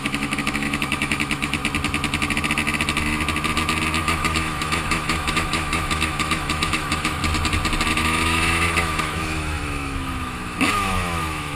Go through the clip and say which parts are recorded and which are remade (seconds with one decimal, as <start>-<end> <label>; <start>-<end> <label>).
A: 0.0-1.6 remade; 1.6-4.0 recorded; 4.0-7.2 remade; 7.2-7.9 recorded; 7.9-11.6 remade